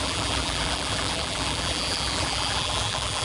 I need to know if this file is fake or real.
fake